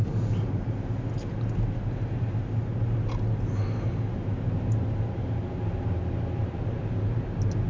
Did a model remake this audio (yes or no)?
no